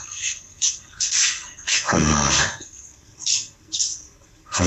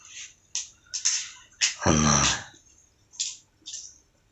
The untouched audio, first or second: second